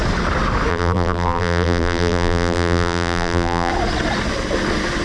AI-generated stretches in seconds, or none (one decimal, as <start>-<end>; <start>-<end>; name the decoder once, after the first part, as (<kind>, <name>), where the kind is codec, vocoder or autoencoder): 0.7-3.7 (vocoder, BigVGAN v2)